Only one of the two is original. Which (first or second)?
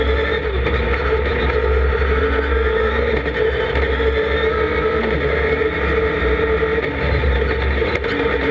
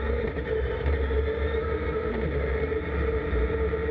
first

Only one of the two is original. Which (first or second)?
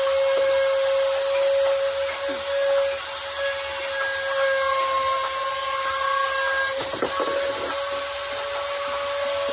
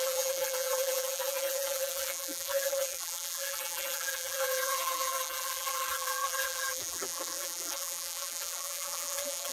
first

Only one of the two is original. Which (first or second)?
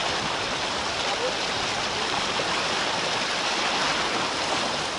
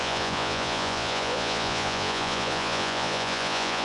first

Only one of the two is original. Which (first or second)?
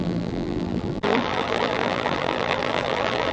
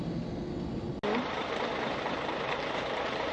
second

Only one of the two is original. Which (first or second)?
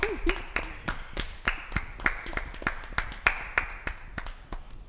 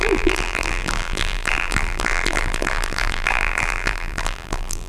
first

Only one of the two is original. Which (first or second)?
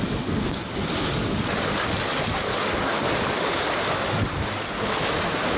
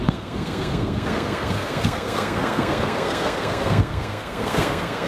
first